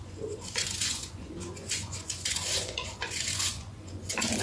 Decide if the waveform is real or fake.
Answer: fake